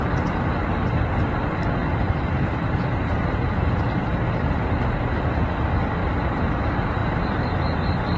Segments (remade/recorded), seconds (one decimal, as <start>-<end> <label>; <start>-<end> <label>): 0.0-1.8 recorded; 1.8-5.0 remade; 5.0-6.0 recorded; 6.0-6.6 remade; 6.6-7.0 recorded; 7.0-7.5 remade; 7.5-8.2 recorded